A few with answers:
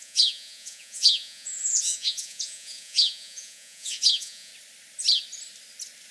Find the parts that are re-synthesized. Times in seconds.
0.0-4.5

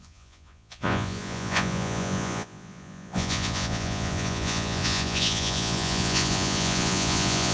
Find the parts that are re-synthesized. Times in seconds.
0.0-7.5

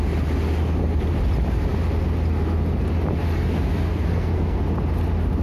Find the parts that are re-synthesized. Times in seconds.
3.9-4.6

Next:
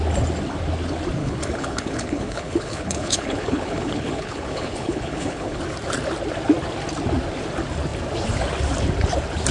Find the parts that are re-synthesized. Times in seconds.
1.2-5.6

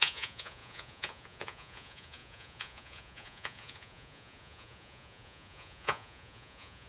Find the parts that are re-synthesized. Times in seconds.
0.0-6.9